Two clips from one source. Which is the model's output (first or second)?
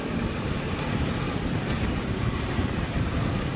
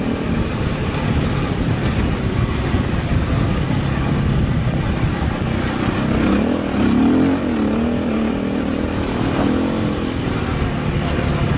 first